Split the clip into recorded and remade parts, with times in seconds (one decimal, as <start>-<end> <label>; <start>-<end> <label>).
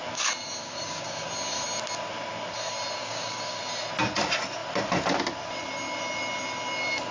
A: 0.0-0.6 recorded; 0.6-1.3 remade; 1.3-3.0 recorded; 3.0-3.6 remade; 3.6-7.1 recorded